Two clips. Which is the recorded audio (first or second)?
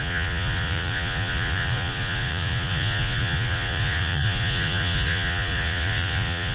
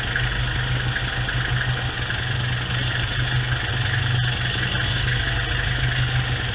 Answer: second